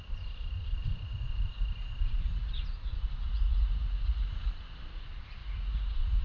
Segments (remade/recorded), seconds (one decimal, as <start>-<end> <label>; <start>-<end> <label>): 0.0-0.8 recorded; 0.8-4.5 remade; 4.5-5.4 recorded; 5.4-6.2 remade